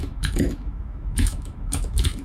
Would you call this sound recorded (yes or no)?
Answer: no